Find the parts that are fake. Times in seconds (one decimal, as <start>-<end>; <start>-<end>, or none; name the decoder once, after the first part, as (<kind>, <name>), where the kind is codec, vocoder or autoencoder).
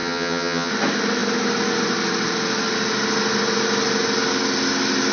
0.0-0.7 (vocoder, HiFi-GAN)